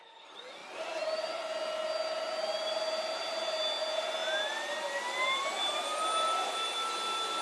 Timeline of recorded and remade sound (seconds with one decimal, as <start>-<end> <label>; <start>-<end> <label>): 0.0-7.4 recorded